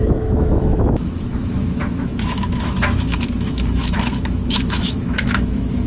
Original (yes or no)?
no